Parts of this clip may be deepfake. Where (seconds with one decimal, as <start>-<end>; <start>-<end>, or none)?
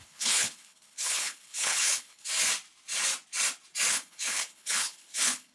0.0-2.3; 3.9-5.5